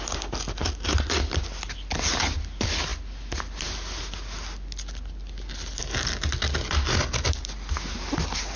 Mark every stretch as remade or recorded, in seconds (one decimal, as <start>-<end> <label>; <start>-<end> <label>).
0.0-8.6 recorded

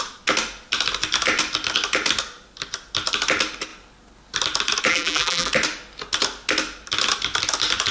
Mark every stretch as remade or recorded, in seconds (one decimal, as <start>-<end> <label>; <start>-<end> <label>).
0.0-4.9 recorded; 4.9-5.5 remade; 5.5-7.9 recorded

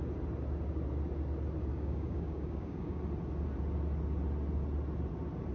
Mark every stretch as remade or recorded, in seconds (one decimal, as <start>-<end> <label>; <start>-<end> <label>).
0.0-1.7 recorded; 1.7-3.0 remade; 3.0-5.5 recorded

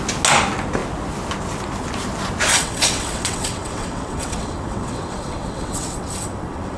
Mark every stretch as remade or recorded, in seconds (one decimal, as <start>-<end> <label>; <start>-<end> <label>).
0.0-2.5 recorded; 2.5-6.8 remade

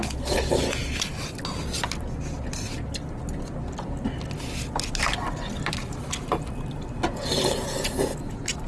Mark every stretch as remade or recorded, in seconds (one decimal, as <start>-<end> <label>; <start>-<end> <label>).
0.0-8.7 recorded